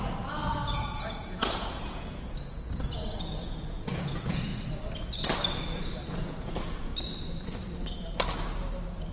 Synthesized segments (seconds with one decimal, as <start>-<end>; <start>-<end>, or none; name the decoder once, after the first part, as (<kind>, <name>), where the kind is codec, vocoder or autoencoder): 0.0-4.5 (vocoder, Vocos); 6.1-6.9